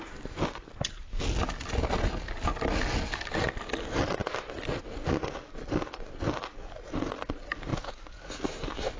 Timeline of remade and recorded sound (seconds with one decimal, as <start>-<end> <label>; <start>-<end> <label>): 0.0-9.0 recorded